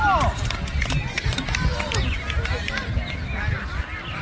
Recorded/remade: recorded